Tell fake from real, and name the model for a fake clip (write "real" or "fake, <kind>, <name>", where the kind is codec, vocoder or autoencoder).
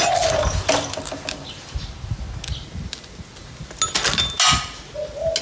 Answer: real